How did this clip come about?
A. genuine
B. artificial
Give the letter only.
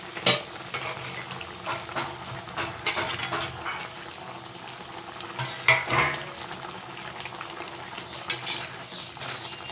A